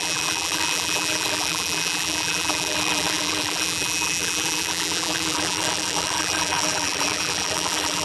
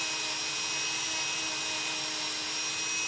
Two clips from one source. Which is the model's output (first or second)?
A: first